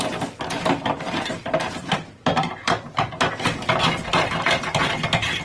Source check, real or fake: real